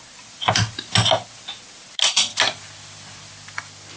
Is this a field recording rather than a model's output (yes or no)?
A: yes